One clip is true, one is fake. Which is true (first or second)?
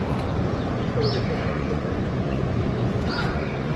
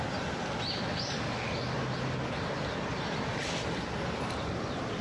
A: second